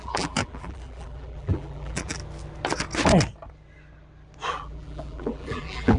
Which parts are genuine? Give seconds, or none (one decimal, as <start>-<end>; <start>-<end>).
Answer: 2.2-4.5